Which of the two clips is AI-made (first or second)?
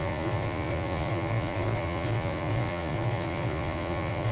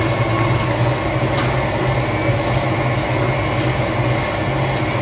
first